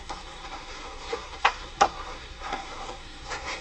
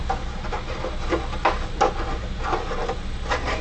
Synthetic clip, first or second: first